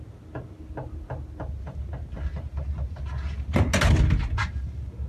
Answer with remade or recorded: recorded